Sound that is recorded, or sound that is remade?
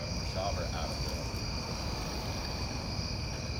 recorded